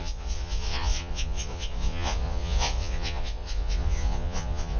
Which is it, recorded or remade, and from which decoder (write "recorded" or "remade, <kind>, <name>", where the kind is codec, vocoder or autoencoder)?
remade, vocoder, Vocos